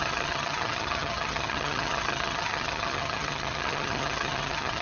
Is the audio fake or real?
fake